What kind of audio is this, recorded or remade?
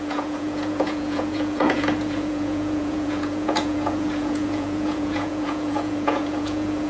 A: remade